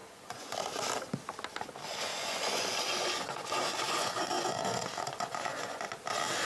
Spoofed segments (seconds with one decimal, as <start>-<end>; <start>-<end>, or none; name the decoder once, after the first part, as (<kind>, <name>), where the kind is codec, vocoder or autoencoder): 0.0-0.5 (vocoder, Vocos); 2.1-5.9